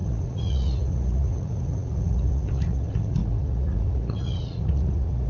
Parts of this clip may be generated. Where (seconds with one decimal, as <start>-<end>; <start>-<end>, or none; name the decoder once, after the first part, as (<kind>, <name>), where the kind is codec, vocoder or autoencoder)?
0.0-5.3 (vocoder, Vocos)